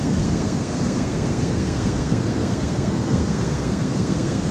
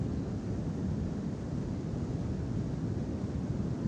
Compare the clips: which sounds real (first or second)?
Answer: second